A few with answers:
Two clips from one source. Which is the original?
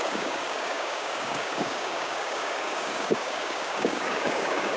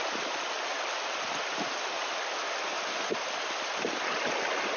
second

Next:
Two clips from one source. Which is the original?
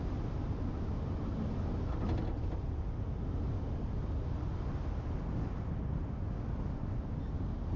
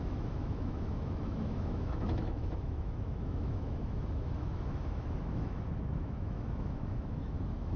first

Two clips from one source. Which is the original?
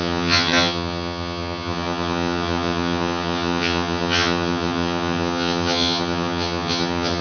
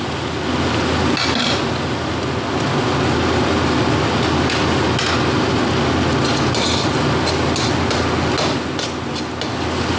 second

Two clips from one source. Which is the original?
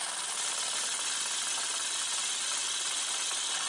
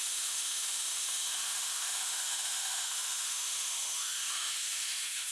first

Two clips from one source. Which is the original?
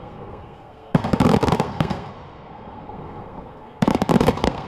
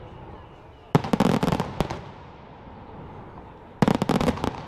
second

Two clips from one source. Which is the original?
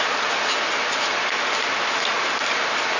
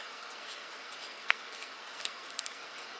first